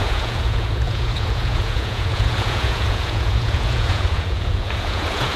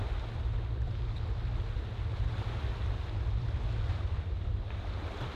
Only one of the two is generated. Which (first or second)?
first